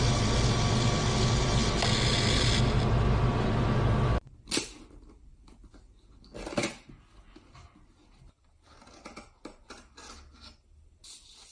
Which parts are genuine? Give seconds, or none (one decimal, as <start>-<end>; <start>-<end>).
0.0-11.5